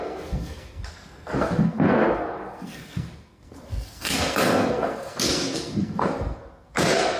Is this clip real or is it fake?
fake